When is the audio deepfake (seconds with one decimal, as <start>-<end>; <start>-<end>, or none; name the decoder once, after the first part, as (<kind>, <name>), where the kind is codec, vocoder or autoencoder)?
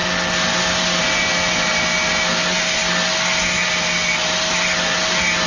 none